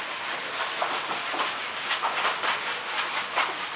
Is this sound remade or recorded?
recorded